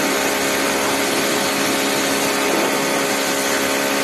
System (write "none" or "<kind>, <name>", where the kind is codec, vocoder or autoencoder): none